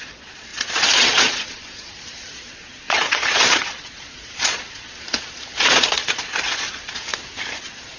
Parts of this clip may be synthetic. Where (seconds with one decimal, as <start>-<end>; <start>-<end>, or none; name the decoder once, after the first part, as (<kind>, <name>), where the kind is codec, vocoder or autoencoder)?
0.0-7.1 (vocoder, Vocos); 7.6-8.0